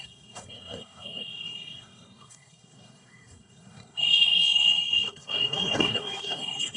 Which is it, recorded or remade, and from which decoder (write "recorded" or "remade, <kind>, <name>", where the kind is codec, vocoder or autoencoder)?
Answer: remade, codec, SNAC